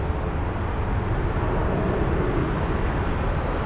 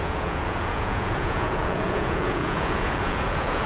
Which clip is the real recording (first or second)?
first